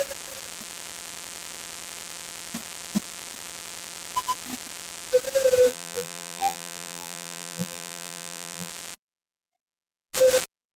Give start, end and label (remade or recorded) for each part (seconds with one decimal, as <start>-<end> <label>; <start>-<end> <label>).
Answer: 0.0-5.7 recorded; 5.7-8.7 remade; 8.7-10.8 recorded